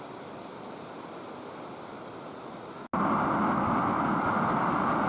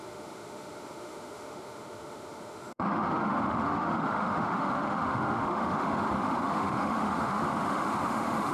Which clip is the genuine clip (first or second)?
first